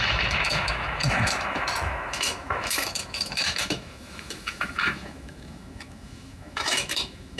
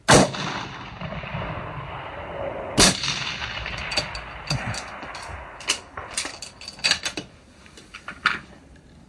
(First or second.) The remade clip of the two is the first